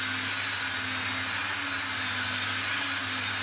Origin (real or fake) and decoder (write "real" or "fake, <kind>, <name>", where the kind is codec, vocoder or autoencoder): real